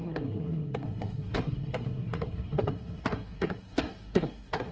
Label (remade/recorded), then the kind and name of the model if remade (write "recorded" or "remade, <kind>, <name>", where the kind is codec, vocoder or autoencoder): remade, codec, SNAC